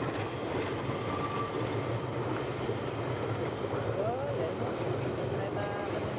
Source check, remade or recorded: recorded